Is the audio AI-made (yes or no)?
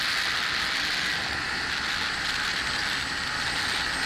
no